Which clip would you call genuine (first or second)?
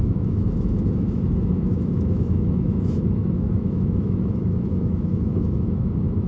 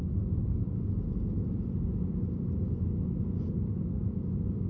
second